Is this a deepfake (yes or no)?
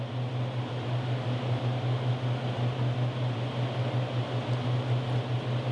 no